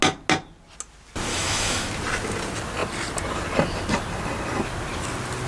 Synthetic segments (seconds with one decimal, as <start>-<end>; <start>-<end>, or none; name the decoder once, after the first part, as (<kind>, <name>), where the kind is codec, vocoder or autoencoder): 1.3-1.9 (autoencoder, DAC-VAE)